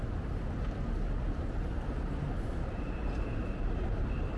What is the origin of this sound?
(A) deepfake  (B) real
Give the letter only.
B